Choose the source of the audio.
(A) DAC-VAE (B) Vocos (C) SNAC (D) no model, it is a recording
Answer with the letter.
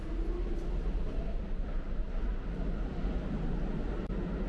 D